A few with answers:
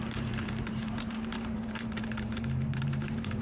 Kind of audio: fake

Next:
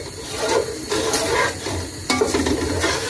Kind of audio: fake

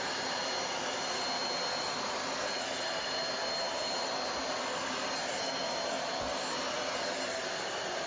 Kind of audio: real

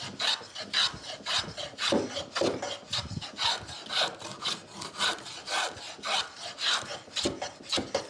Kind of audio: real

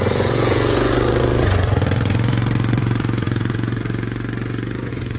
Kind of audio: fake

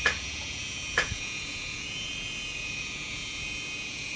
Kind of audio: fake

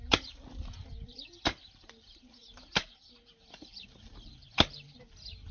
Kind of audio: fake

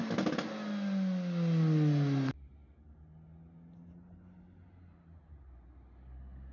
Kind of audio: real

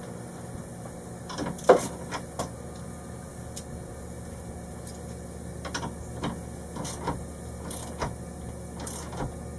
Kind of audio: real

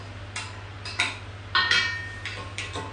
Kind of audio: real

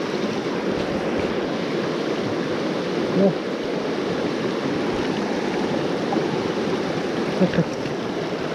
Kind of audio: real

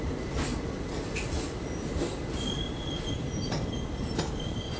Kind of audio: real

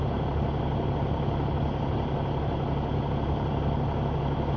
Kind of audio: real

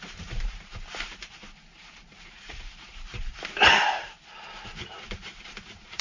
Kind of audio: fake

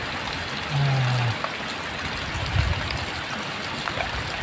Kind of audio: real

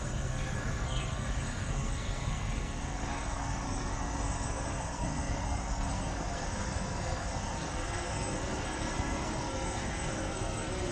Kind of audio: fake